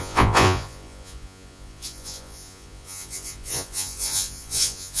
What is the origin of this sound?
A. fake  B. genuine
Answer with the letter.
A